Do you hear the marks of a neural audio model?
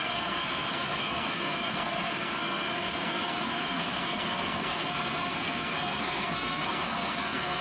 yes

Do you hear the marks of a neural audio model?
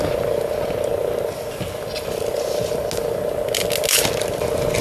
no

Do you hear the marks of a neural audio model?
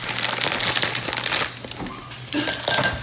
no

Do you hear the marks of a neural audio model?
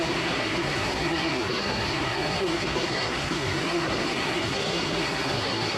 yes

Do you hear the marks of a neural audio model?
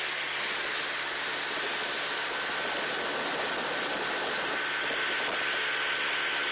no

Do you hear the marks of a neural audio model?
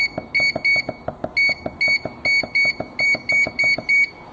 no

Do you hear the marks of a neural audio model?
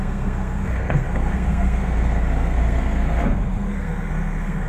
yes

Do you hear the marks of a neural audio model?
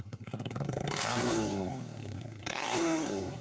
yes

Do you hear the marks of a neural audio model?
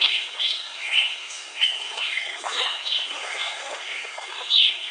yes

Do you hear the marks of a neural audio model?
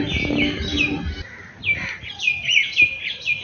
no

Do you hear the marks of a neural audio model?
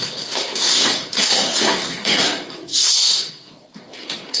yes